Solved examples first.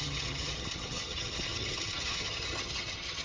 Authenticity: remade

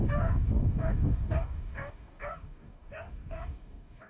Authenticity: remade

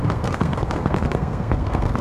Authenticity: remade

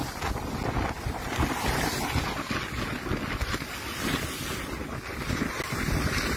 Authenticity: recorded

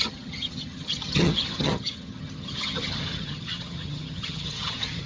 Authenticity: remade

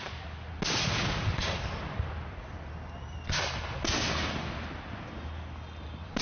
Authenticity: recorded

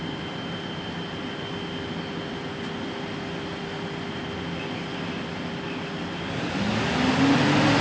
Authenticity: recorded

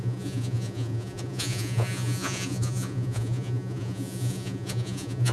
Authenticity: remade